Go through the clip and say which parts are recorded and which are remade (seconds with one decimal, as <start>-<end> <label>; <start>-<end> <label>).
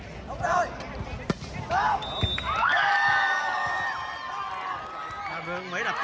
0.0-2.6 recorded; 2.6-3.7 remade; 3.7-6.0 recorded